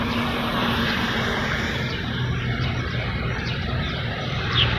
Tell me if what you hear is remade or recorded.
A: remade